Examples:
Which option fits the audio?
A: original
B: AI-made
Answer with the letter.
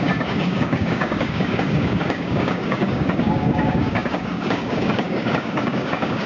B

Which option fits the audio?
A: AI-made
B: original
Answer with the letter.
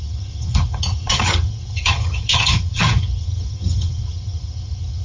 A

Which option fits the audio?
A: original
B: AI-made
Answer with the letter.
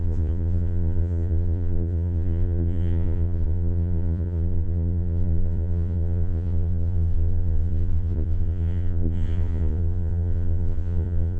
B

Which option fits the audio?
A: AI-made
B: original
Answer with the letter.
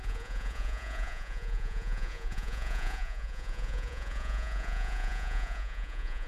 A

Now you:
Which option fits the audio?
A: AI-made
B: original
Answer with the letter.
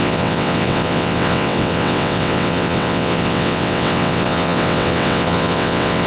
A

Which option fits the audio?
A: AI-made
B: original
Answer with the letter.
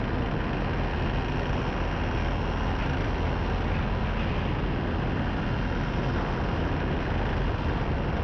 B